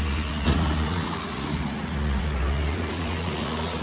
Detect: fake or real fake